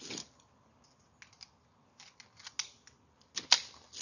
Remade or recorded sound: recorded